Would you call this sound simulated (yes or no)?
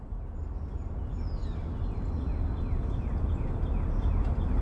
yes